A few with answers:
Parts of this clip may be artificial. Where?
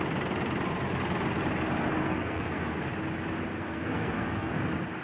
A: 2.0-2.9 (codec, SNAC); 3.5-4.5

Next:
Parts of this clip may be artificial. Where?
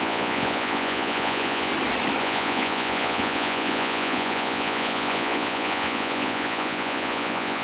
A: 0.0-1.7 (vocoder, Vocos); 2.2-7.6